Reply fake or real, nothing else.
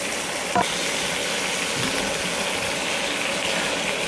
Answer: real